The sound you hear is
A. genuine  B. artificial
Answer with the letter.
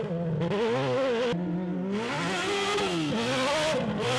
A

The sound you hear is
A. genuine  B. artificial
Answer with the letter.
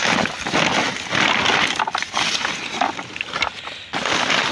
A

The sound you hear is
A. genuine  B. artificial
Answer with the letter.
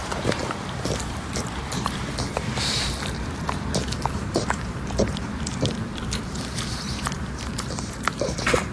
B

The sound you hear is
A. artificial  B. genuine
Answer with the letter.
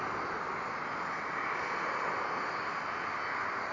B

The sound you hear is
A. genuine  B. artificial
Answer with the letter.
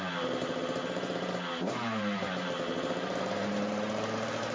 B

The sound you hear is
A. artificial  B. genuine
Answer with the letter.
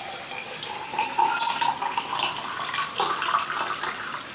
A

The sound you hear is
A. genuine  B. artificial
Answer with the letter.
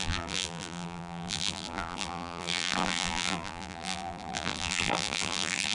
B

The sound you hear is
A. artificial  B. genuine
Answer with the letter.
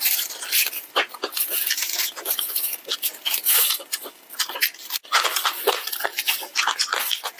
B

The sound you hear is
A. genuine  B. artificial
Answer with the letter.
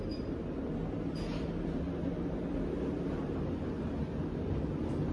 A